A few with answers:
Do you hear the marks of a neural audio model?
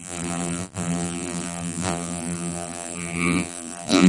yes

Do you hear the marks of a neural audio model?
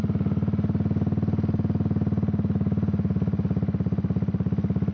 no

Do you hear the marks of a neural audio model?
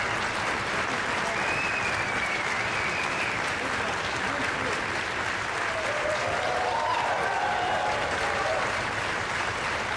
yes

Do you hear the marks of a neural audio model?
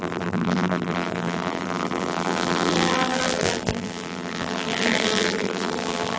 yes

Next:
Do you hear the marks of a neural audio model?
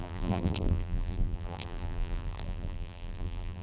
yes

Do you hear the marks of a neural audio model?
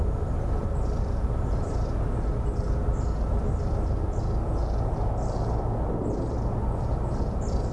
no